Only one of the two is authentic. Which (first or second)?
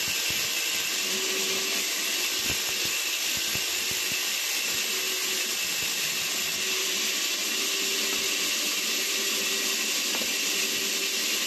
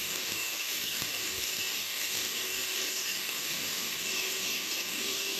first